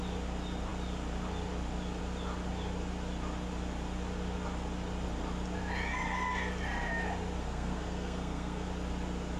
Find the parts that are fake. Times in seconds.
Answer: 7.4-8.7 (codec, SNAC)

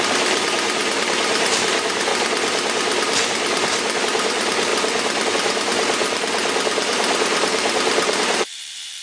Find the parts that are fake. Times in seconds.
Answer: 0.0-2.1 (vocoder, BigVGAN v2); 4.0-4.7; 5.3-9.0

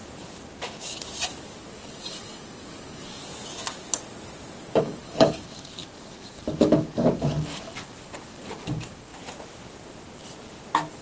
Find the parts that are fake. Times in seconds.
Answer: 1.7-3.3 (codec, DAC); 4.8-9.1

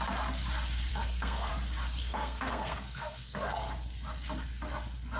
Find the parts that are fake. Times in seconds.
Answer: 0.9-1.5 (codec, SNAC); 2.0-3.7

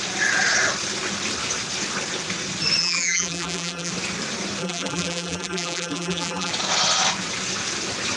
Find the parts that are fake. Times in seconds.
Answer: 2.8-3.9 (vocoder, BigVGAN v2); 4.6-6.5